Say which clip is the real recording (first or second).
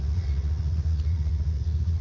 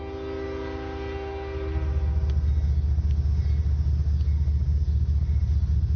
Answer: second